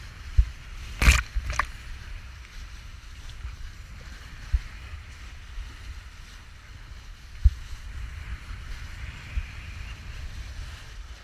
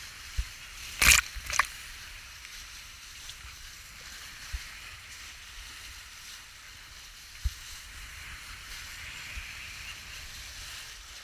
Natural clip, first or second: first